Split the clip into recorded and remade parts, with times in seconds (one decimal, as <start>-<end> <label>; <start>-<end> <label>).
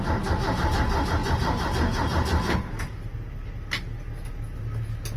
0.0-5.2 recorded